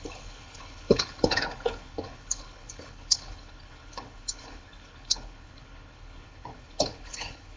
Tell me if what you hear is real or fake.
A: fake